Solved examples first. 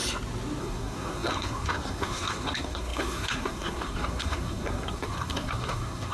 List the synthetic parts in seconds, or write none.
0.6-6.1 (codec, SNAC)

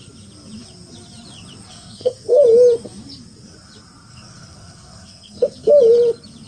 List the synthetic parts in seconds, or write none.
1.7-2.4 (codec, SNAC); 4.1-5.7

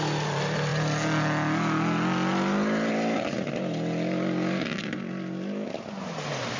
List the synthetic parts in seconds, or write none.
none

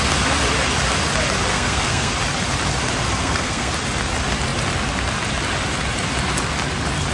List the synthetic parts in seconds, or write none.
1.5-2.1 (codec, SNAC); 3.2-3.7

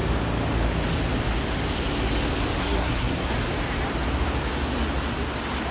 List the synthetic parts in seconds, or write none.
2.6-3.3 (codec, SNAC)

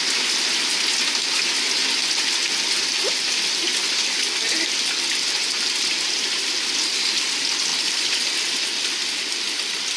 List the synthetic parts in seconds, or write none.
none

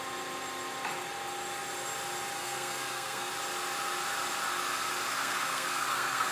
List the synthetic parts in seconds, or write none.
2.4-3.3 (codec, SNAC); 5.1-6.3